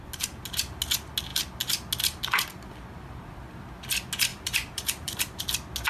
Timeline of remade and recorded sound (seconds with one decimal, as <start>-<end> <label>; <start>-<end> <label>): 0.0-4.3 recorded; 4.3-5.4 remade; 5.4-5.9 recorded